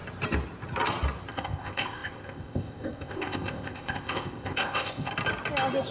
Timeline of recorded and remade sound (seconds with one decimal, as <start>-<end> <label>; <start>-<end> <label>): 0.0-1.3 recorded; 1.3-5.1 remade; 5.1-5.9 recorded